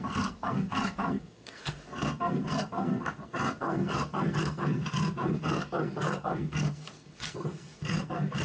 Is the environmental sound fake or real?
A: fake